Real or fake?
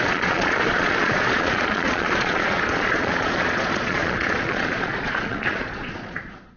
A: fake